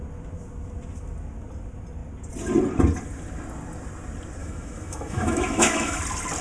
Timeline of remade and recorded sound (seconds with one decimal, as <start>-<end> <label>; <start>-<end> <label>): 0.0-4.4 recorded; 4.4-6.0 remade; 6.0-6.4 recorded